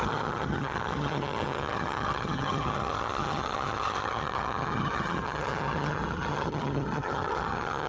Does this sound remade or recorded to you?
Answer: remade